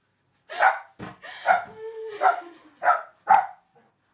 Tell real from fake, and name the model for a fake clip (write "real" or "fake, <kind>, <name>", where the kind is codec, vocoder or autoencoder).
real